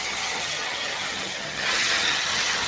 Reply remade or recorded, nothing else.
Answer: remade